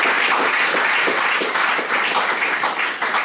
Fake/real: real